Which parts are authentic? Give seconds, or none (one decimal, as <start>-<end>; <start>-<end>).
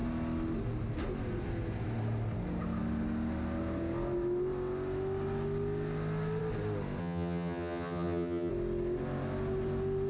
0.0-7.0; 8.5-10.1